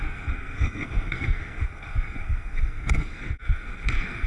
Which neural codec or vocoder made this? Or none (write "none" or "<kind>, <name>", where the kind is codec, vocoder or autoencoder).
codec, SNAC